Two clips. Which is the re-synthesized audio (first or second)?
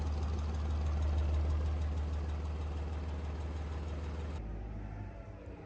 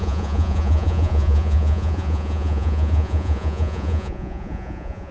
second